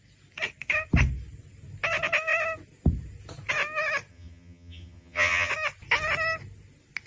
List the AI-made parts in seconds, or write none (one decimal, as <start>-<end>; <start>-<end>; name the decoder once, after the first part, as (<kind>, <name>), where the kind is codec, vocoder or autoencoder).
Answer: 4.1-5.5 (vocoder, HiFi-GAN)